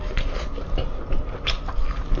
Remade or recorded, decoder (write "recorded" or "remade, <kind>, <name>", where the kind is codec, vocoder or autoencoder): recorded